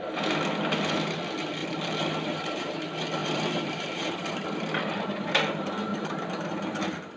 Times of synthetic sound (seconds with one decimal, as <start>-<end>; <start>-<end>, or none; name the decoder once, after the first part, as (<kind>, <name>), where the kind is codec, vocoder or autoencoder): 1.6-2.8 (vocoder, BigVGAN v2); 3.2-5.3; 5.9-6.8